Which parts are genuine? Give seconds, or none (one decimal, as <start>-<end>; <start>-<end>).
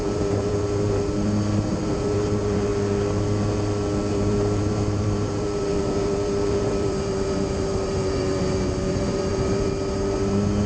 2.7-4.1